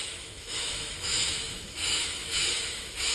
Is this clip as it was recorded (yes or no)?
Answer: no